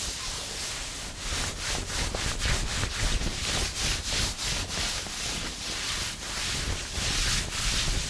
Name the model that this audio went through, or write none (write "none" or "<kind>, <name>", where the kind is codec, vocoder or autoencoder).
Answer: none